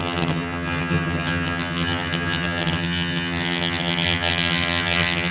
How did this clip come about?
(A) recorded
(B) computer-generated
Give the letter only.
B